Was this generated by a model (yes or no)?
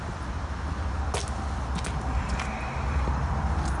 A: no